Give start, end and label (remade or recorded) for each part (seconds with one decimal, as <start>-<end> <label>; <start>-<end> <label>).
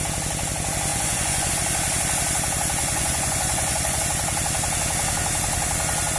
0.0-0.9 recorded; 0.9-1.5 remade; 1.5-2.8 recorded; 2.8-4.0 remade; 4.0-6.2 recorded